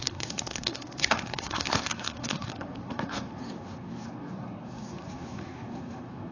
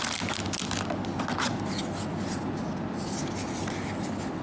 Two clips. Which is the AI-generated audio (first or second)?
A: first